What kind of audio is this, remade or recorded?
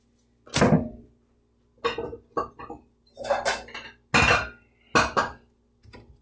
recorded